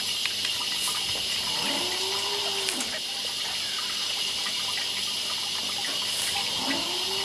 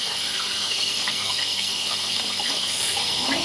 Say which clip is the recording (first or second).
first